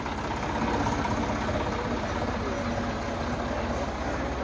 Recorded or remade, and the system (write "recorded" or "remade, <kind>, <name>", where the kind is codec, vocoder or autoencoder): recorded